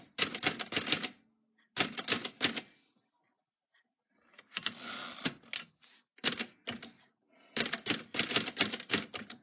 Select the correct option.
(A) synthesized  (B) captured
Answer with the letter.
B